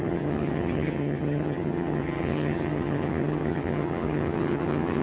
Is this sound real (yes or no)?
no